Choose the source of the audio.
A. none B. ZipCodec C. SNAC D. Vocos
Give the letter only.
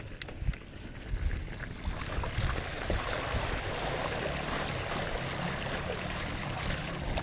A